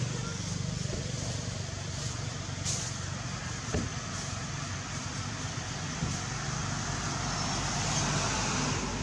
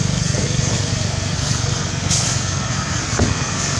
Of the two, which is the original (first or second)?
first